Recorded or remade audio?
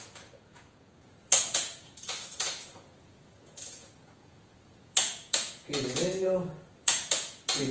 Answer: remade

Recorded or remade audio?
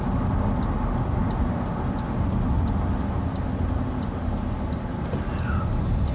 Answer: recorded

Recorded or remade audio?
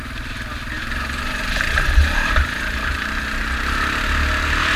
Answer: recorded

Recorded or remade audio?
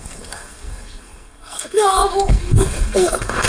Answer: remade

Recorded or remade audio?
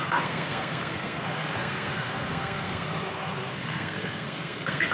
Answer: remade